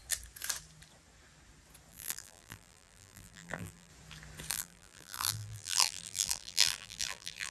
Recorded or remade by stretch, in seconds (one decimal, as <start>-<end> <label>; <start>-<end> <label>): 0.0-1.9 recorded; 1.9-3.9 remade; 3.9-4.5 recorded; 4.5-7.5 remade